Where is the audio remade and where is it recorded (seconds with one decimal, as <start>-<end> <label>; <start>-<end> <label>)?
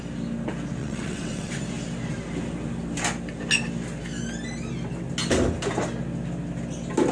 0.0-0.8 recorded; 0.8-1.5 remade; 1.5-7.1 recorded